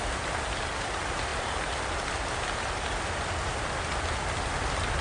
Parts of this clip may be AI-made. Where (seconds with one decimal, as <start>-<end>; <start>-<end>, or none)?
none